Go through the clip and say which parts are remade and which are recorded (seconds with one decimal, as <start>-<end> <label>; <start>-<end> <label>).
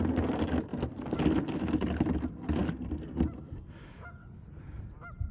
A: 0.0-4.2 recorded; 4.2-4.8 remade; 4.8-5.3 recorded